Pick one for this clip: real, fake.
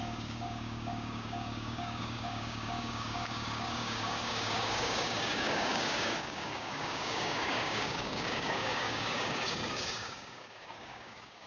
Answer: fake